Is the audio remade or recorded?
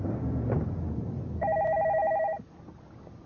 recorded